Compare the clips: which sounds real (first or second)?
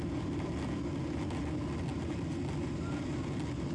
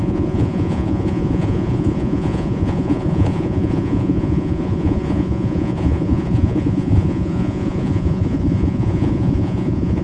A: first